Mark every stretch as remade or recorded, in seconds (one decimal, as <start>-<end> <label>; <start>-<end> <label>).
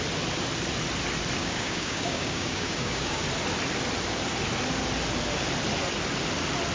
0.0-1.4 recorded; 1.4-3.2 remade; 3.2-6.7 recorded